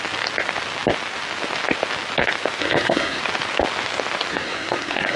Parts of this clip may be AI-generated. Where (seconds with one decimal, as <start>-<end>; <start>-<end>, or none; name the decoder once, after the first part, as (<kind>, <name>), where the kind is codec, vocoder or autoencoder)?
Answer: 2.6-3.2 (codec, SNAC); 4.3-5.2